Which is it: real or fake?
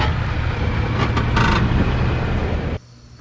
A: real